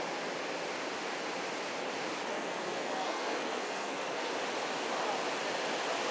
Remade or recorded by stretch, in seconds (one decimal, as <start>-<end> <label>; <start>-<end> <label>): 0.0-2.3 recorded; 2.3-4.3 remade; 4.3-6.1 recorded